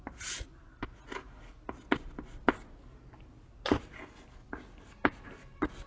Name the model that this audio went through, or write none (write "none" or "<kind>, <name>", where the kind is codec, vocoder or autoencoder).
none